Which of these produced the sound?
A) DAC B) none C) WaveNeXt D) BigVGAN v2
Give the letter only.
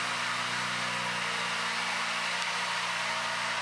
B